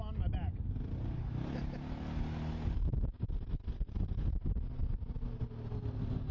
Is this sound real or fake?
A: real